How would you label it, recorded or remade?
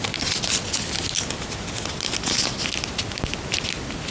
recorded